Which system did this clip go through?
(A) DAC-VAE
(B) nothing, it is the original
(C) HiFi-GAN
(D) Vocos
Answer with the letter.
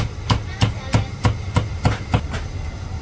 B